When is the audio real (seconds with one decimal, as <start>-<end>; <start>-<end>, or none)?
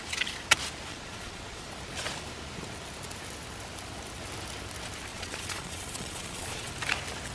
0.0-0.9; 1.7-5.1; 6.7-7.3